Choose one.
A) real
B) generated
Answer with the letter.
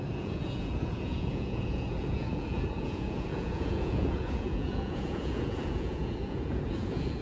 B